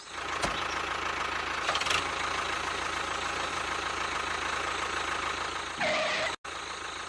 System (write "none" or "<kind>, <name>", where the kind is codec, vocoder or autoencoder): none